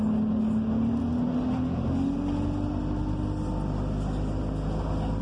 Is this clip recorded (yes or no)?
yes